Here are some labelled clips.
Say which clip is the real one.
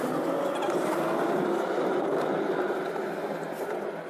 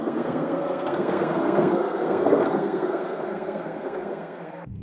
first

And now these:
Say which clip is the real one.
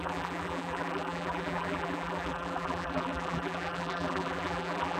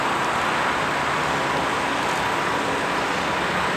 second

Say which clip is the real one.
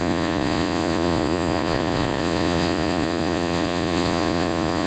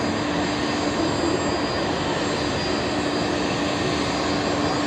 second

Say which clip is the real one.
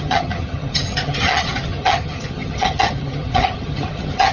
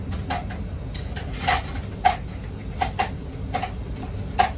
second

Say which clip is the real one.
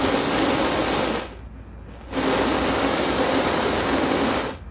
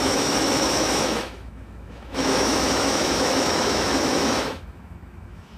first